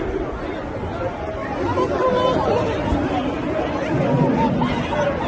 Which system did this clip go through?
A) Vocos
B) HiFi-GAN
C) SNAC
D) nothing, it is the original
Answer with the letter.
D